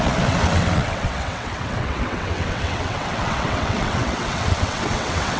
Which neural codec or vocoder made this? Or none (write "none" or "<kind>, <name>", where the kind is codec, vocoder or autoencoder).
vocoder, WaveNeXt